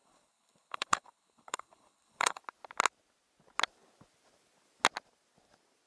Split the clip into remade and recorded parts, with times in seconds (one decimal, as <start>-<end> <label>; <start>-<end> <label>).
0.0-2.4 remade; 2.4-5.9 recorded